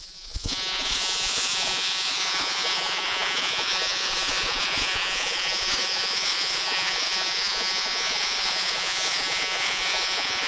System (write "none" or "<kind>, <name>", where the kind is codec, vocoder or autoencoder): vocoder, Vocos